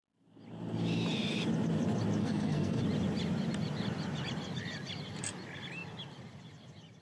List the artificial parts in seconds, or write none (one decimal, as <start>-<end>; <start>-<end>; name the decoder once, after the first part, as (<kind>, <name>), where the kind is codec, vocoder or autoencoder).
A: 2.2-2.8 (codec, SNAC)